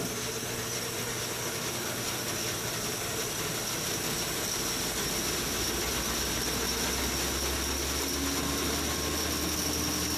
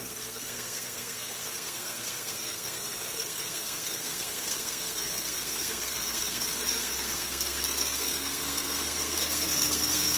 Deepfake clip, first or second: second